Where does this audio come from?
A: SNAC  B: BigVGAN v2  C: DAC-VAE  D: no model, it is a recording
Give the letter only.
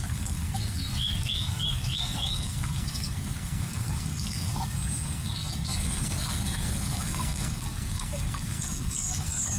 A